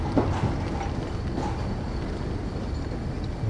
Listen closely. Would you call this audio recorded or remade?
recorded